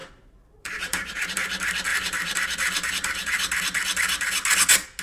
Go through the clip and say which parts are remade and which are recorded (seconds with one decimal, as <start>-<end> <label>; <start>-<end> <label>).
0.0-1.3 remade; 1.3-1.9 recorded; 1.9-2.9 remade; 2.9-5.0 recorded